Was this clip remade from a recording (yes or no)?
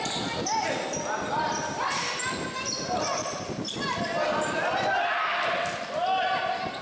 no